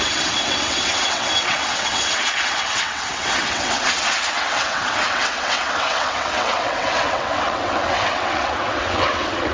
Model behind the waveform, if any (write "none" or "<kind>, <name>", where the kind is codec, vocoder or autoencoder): vocoder, WaveNeXt